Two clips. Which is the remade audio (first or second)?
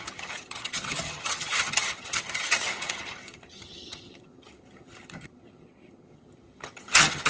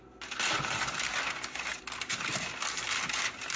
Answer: first